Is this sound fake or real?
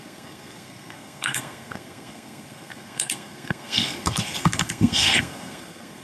fake